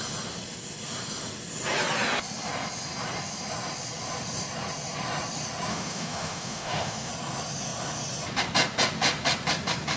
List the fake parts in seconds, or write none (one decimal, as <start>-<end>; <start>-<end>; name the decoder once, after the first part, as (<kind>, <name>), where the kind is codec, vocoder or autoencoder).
5.7-7.1 (autoencoder, DAC-VAE)

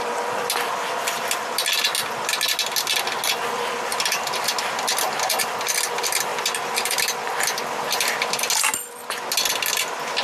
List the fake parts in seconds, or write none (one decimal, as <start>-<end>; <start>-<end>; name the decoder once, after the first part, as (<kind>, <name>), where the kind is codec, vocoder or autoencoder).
none

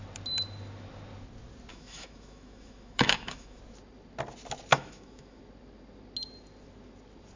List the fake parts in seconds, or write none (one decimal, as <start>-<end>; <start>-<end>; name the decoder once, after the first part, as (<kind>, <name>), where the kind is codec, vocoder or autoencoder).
1.7-3.6 (autoencoder, DAC-VAE); 4.7-5.4

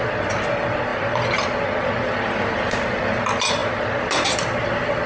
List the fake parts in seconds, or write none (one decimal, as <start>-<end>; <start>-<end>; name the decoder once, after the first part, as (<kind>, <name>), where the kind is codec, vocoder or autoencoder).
none

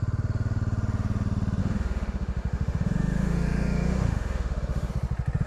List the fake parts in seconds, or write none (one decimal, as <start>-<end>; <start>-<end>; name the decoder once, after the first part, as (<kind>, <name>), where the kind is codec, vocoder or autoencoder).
1.6-4.9 (autoencoder, DAC-VAE)

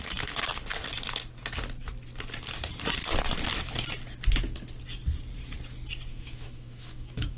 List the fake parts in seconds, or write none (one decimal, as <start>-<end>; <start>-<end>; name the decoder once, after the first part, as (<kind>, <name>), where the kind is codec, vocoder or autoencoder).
6.1-7.4 (autoencoder, DAC-VAE)

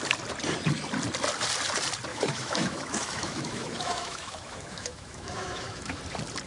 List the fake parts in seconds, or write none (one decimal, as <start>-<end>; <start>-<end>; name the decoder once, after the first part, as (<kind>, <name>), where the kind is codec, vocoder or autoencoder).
2.1-6.0 (autoencoder, DAC-VAE)